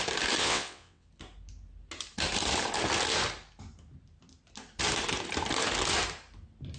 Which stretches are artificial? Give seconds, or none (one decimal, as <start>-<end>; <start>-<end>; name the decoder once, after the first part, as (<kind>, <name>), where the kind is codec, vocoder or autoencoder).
0.4-1.1 (vocoder, WaveNeXt)